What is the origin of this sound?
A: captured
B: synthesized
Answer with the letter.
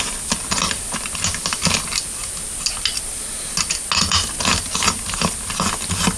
A